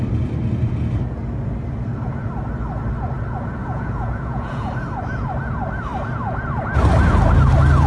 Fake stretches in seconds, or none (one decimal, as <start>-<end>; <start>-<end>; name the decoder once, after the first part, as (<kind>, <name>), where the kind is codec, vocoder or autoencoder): 3.6-4.7 (vocoder, Vocos)